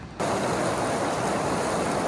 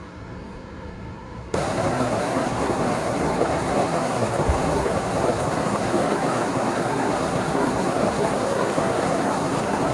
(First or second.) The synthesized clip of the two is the second